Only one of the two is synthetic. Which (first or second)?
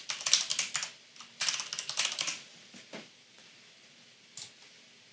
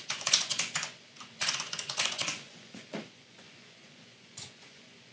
second